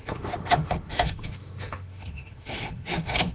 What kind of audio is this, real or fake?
fake